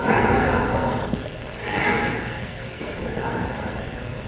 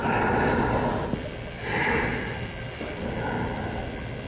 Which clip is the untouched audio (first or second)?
second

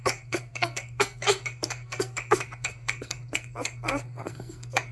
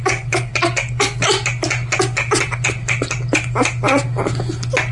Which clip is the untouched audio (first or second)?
second